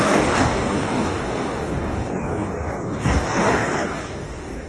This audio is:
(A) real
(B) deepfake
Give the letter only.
B